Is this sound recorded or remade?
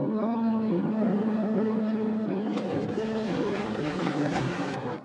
remade